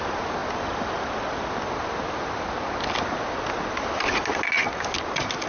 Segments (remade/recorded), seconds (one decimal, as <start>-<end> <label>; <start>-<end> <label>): 0.0-5.5 recorded